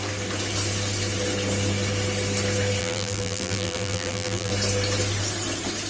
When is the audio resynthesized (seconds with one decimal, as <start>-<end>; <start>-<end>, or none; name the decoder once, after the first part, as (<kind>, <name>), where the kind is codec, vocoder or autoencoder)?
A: 2.8-4.5 (vocoder, BigVGAN v2)

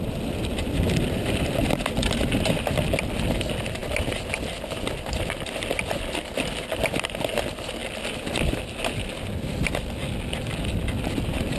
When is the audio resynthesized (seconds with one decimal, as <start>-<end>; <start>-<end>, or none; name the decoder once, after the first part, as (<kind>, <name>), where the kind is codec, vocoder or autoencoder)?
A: none